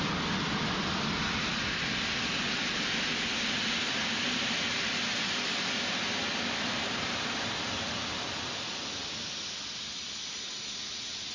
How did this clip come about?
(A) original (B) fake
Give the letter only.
A